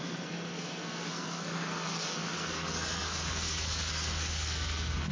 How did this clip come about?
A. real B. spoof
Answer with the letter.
B